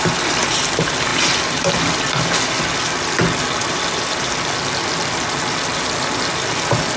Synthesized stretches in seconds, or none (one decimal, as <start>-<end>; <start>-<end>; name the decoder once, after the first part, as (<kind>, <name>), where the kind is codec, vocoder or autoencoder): none